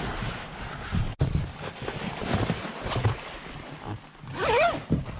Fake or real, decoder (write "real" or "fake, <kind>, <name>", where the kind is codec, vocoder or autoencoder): real